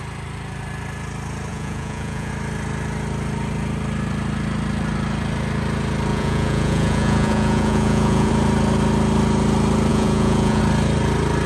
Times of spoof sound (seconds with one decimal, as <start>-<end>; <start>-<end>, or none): 1.5-2.3; 6.1-8.3; 9.9-10.6